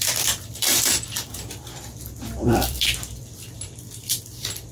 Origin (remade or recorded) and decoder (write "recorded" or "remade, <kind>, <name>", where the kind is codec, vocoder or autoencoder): remade, vocoder, BigVGAN v2